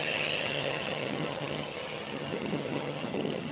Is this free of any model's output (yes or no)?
no